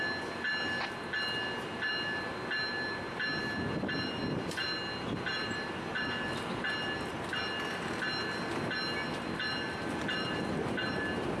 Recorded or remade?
recorded